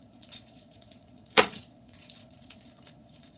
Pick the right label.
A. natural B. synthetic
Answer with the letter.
B